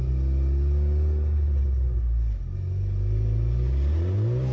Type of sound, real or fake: real